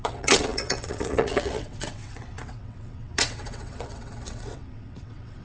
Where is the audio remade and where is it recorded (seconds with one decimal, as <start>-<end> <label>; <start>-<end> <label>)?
0.0-5.4 remade